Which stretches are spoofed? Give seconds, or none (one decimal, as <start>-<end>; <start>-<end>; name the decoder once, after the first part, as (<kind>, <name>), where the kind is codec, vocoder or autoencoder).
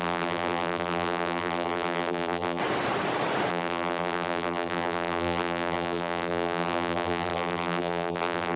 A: 0.0-2.6 (vocoder, BigVGAN v2); 3.5-8.6